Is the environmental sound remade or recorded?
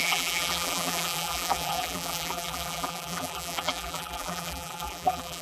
remade